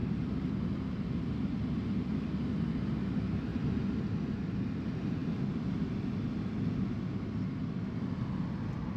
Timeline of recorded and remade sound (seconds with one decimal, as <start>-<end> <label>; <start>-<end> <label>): 0.0-9.0 recorded